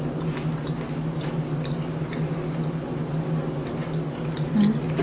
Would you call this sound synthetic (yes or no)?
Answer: no